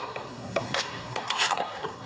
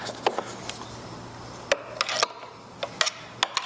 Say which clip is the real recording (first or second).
second